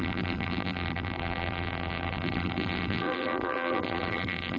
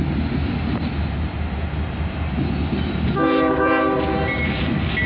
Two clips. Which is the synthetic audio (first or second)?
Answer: first